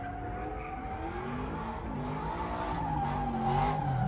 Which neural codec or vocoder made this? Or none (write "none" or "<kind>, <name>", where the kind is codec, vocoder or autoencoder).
none